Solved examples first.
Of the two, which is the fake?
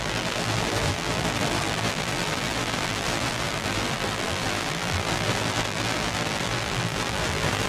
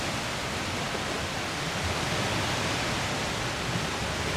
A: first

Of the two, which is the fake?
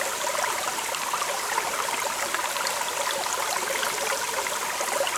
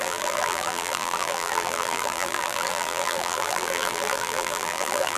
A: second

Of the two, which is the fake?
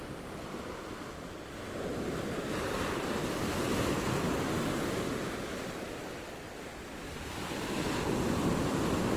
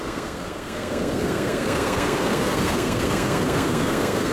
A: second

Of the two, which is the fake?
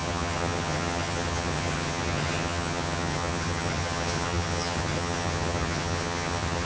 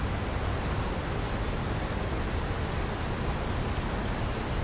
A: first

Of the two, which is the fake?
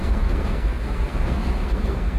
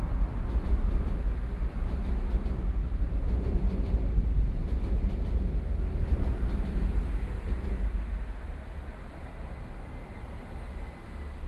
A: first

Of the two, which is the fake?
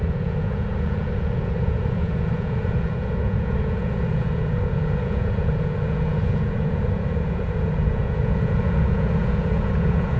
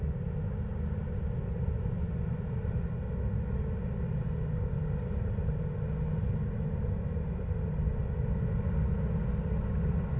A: first